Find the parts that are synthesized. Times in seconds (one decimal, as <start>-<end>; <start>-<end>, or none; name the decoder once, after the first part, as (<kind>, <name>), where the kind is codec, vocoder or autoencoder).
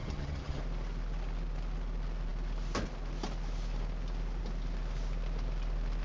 0.0-0.6 (vocoder, HiFi-GAN)